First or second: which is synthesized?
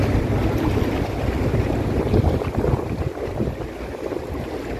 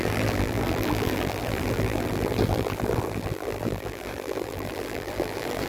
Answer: second